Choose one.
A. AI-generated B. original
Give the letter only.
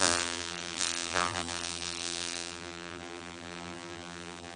A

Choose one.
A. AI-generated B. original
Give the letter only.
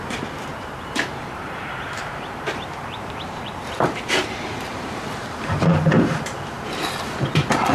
A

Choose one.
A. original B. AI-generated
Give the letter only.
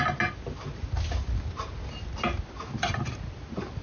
A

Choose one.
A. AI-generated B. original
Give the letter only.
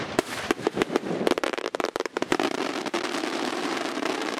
A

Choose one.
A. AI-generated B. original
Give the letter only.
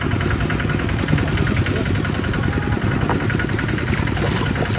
B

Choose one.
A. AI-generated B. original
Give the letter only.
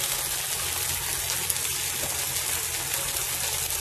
B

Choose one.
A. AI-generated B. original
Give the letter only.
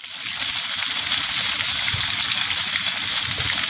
A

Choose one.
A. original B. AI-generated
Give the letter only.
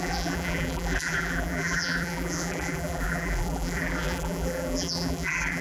B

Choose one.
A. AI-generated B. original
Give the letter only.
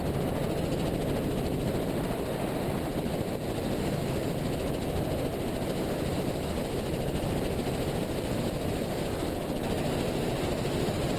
B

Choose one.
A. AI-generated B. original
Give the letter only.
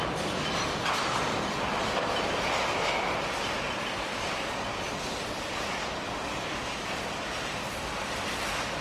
A